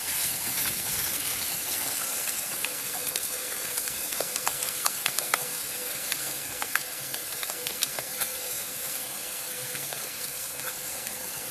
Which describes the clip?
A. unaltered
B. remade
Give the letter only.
B